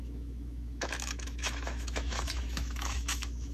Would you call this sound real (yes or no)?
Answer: no